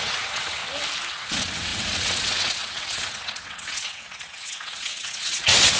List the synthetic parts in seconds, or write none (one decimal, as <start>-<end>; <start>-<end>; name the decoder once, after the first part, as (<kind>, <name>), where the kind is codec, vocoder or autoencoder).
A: 0.0-0.6 (vocoder, WaveNeXt); 1.1-5.8